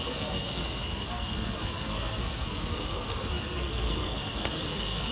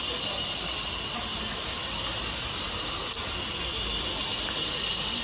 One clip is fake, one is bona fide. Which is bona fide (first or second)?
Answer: second